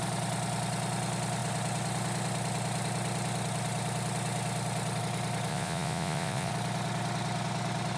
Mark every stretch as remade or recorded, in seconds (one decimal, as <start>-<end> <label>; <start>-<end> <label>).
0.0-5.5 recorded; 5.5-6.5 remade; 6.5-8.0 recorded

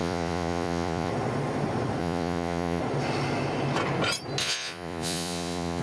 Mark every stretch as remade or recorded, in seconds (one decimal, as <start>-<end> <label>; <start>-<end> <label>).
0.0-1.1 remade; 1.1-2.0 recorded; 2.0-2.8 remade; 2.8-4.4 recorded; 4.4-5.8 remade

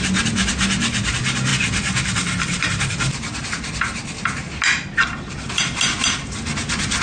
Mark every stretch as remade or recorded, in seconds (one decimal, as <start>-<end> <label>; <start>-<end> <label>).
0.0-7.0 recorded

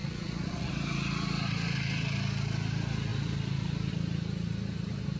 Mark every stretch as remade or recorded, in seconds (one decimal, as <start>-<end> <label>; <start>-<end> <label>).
0.0-0.7 remade; 0.7-5.2 recorded

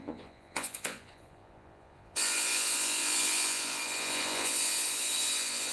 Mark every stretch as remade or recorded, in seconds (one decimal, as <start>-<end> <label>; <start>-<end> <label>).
0.0-5.7 remade